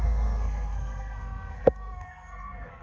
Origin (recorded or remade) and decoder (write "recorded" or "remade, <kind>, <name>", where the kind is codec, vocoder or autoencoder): remade, codec, SNAC